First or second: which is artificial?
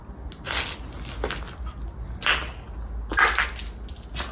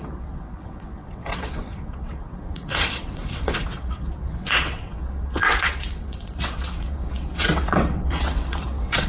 second